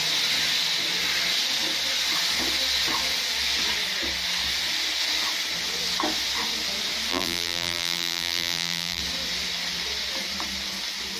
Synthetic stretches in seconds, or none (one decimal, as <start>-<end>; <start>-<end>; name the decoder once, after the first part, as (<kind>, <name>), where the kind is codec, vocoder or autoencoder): 7.1-9.0 (vocoder, BigVGAN v2)